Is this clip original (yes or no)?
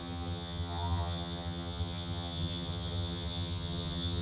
no